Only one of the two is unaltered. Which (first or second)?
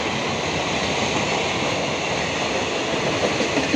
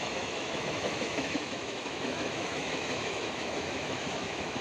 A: first